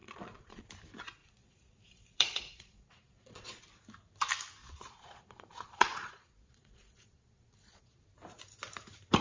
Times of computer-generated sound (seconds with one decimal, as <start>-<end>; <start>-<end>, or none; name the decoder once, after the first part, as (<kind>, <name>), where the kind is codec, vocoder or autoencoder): 0.0-0.6 (vocoder, Vocos); 1.2-3.6; 4.6-8.0